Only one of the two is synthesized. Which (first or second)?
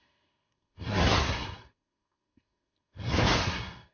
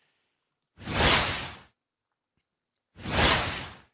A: first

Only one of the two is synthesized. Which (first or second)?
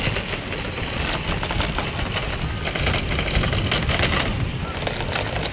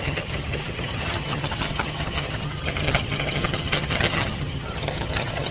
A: second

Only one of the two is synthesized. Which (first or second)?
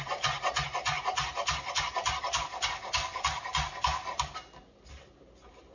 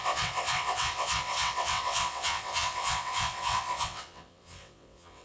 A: second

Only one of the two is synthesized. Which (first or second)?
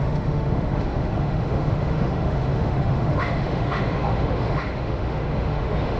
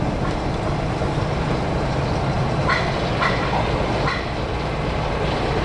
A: first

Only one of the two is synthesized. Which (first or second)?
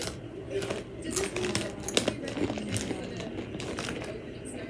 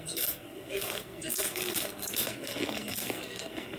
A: second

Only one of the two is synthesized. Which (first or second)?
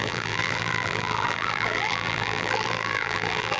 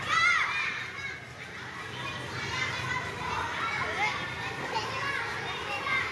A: first